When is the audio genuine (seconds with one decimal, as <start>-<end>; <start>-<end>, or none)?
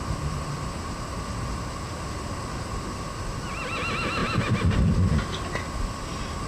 0.0-6.5